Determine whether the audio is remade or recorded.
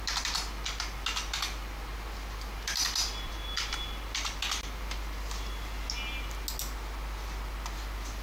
recorded